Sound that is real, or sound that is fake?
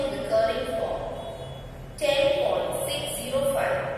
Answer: real